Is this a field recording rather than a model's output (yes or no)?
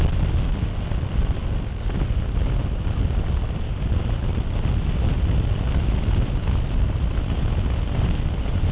yes